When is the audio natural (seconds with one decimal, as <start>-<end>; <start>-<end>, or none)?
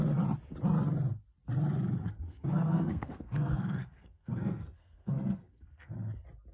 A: 0.0-2.0; 5.9-6.5